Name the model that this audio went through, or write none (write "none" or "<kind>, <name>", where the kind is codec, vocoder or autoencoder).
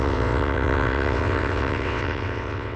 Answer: vocoder, WaveNeXt